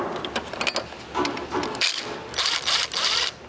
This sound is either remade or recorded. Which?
recorded